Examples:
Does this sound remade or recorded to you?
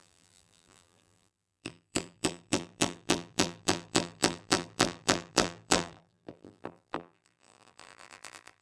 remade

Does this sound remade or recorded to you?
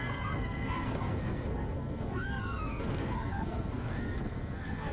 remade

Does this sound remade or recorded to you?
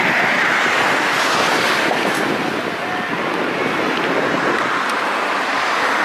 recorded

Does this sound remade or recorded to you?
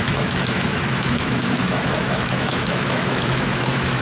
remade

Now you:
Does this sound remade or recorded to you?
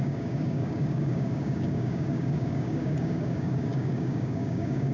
remade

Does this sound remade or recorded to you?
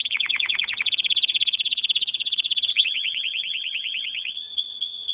remade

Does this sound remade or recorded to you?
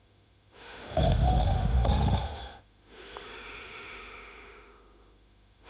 remade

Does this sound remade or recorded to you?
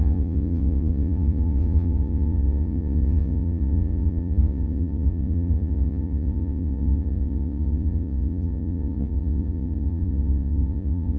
remade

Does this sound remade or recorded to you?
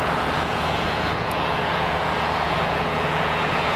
remade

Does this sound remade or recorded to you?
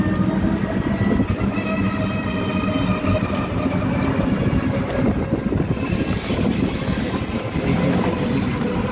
recorded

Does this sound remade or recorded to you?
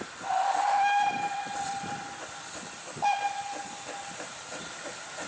recorded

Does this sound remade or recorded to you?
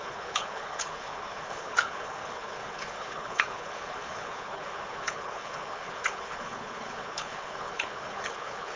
remade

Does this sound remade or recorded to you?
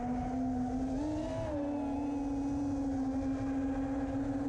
recorded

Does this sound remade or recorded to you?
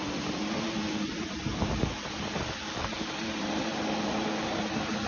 remade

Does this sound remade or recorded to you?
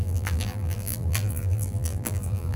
remade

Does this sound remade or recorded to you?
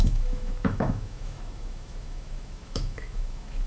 remade